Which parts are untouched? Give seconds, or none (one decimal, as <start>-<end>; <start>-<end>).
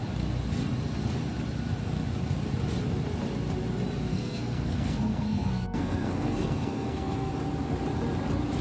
0.0-4.1; 7.3-8.6